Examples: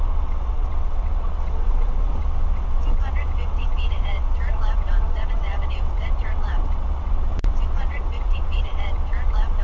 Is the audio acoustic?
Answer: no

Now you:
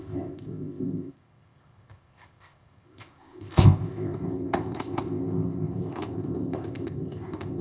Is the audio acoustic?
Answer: no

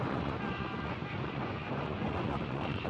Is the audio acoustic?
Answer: no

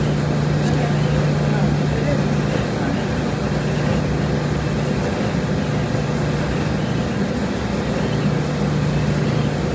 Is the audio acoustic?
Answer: yes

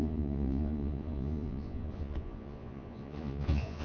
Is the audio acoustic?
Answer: no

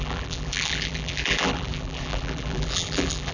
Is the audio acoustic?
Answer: no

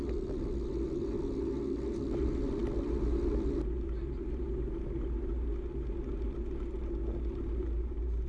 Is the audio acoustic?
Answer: yes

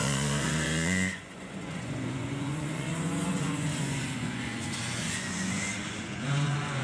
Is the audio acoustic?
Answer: no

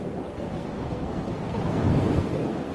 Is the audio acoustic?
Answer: no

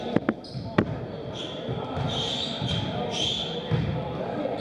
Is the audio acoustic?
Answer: no